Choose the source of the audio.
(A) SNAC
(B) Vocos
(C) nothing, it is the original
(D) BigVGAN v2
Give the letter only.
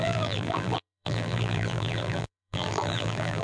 D